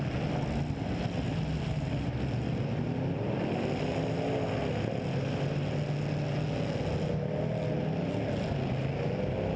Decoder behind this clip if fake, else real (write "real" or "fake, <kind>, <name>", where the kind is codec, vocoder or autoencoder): real